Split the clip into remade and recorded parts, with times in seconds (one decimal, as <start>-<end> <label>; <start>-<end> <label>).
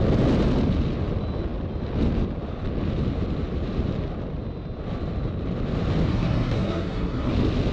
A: 0.0-6.1 recorded; 6.1-7.3 remade; 7.3-7.7 recorded